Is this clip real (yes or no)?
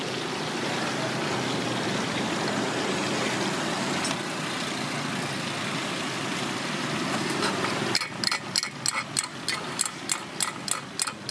yes